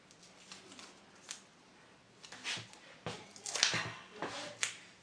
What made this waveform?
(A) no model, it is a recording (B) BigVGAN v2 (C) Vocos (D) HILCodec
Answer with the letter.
A